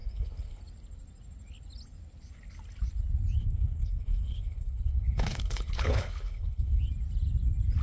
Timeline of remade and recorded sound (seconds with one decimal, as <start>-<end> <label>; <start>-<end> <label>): 0.0-0.6 remade; 0.6-3.4 recorded; 3.4-6.8 remade; 6.8-7.8 recorded